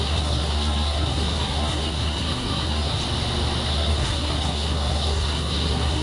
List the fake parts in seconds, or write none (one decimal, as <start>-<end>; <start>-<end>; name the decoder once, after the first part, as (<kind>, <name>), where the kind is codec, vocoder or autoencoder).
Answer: 0.0-3.0 (codec, SNAC); 3.7-6.0